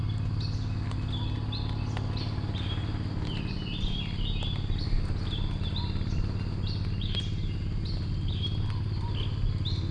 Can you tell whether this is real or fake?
real